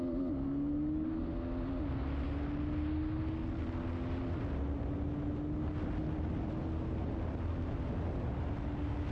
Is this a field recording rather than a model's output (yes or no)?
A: yes